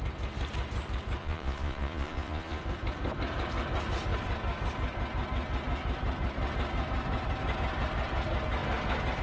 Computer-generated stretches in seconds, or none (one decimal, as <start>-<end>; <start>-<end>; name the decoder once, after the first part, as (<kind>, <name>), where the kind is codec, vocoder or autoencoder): 1.2-2.6 (vocoder, Vocos)